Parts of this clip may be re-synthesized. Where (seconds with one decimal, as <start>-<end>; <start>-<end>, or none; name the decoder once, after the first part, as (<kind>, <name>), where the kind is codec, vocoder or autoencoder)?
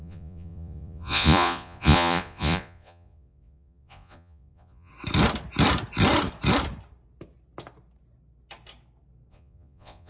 0.0-4.9 (vocoder, Vocos); 9.3-10.1